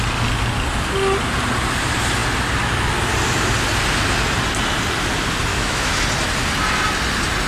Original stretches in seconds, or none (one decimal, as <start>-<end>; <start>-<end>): 0.0-5.5; 6.0-7.5